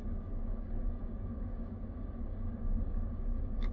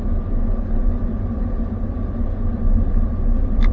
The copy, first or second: first